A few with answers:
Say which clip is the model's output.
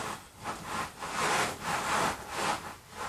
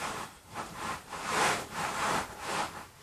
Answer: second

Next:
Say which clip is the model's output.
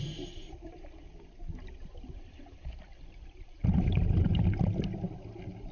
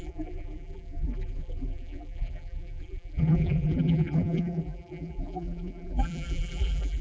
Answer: second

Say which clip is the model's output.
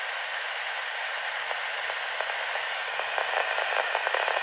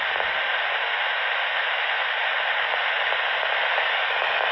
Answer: first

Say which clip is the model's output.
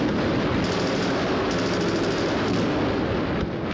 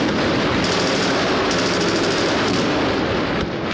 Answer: second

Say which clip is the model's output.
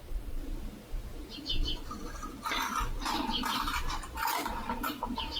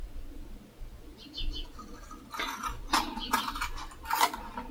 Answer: first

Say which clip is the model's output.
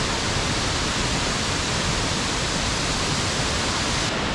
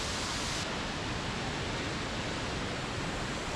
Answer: first